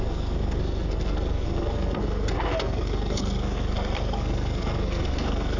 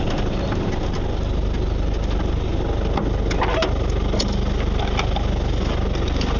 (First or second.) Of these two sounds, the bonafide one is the second